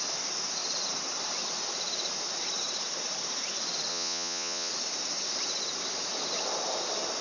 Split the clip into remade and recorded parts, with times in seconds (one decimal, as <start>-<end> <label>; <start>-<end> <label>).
0.0-3.9 recorded; 3.9-4.7 remade; 4.7-7.2 recorded